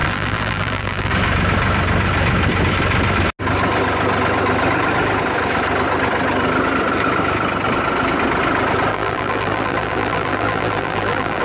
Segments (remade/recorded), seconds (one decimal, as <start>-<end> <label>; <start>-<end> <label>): 0.0-1.1 remade; 1.1-8.9 recorded; 8.9-11.4 remade